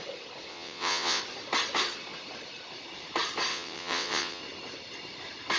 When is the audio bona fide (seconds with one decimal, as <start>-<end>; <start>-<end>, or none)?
0.0-0.5; 1.2-3.5; 4.4-5.6